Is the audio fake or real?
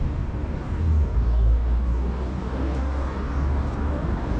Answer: fake